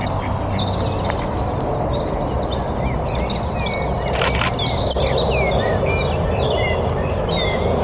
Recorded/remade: recorded